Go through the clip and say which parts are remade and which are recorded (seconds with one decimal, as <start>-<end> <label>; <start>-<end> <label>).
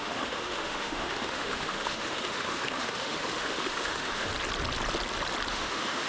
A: 0.0-4.3 remade; 4.3-5.5 recorded; 5.5-6.1 remade